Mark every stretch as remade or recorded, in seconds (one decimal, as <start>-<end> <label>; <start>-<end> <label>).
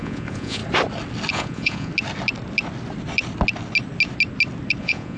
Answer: 0.0-0.6 remade; 0.6-1.3 recorded; 1.3-1.9 remade; 1.9-4.8 recorded; 4.8-5.2 remade